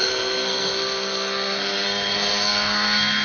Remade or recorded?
remade